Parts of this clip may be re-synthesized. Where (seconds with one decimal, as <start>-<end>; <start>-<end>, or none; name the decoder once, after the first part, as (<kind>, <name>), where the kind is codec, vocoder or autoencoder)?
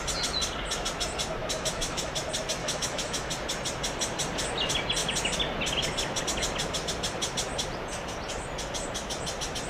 1.4-2.1 (autoencoder, DAC-VAE); 2.6-3.3